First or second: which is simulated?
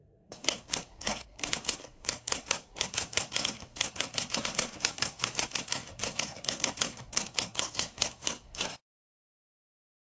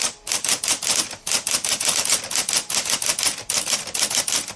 first